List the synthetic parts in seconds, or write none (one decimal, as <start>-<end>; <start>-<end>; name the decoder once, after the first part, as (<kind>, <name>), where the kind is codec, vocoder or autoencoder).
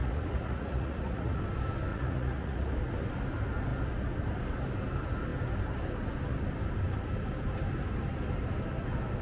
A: 0.0-1.4 (vocoder, Vocos); 1.9-2.7